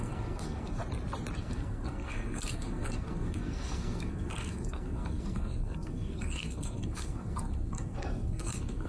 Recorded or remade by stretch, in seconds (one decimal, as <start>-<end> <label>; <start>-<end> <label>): 0.0-0.8 remade; 0.8-1.4 recorded; 1.4-8.9 remade